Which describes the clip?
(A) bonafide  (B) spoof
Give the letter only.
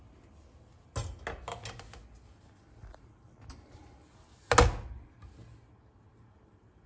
A